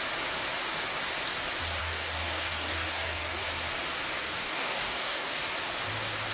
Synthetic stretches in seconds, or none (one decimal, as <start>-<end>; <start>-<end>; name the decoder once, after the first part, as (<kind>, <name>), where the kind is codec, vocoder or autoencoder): 1.8-3.4 (codec, DAC); 4.2-5.4